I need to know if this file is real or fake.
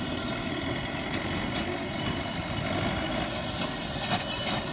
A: real